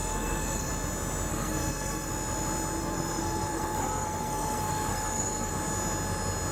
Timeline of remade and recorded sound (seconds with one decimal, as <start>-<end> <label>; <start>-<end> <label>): 0.0-0.7 remade; 0.7-1.3 recorded; 1.3-2.1 remade; 2.1-2.8 recorded; 2.8-5.5 remade; 5.5-6.5 recorded